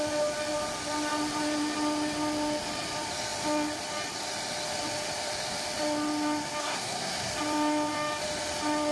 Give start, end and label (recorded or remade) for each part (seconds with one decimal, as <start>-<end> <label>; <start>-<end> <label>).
0.0-6.6 recorded; 6.6-7.3 remade; 7.3-8.9 recorded